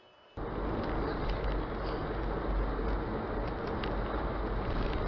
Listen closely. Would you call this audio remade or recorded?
recorded